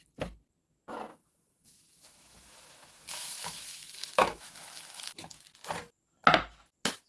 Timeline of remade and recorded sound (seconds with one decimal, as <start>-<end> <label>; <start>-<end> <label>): 0.0-1.1 recorded; 1.1-5.4 remade; 5.4-7.1 recorded

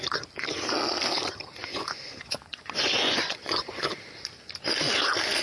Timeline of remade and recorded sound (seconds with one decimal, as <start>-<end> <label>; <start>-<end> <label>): 0.0-1.6 recorded; 1.6-3.8 remade; 3.8-5.4 recorded